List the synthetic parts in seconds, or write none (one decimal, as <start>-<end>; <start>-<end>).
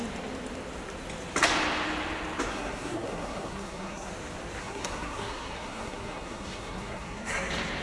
2.5-4.1; 4.6-7.3